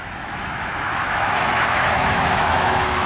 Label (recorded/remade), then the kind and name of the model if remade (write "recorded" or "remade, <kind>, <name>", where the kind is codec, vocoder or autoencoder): remade, autoencoder, DAC-VAE